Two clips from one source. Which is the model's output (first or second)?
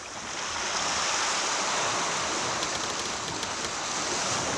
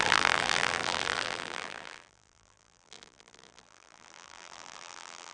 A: second